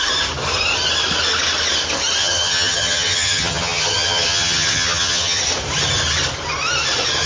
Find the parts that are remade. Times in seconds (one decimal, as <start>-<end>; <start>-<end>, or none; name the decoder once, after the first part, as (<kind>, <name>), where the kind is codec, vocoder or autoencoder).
2.2-5.4 (vocoder, HiFi-GAN)